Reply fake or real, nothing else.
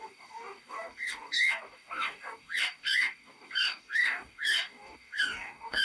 fake